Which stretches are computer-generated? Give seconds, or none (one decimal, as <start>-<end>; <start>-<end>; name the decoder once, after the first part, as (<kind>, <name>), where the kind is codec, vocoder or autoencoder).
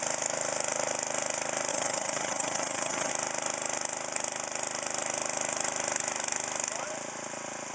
1.7-3.1 (vocoder, HiFi-GAN)